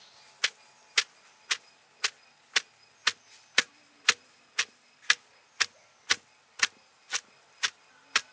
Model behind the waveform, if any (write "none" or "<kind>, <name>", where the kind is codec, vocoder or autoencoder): none